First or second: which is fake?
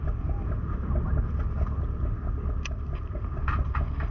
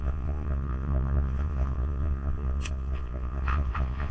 second